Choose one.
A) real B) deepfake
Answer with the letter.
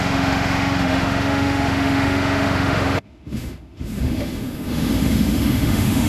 B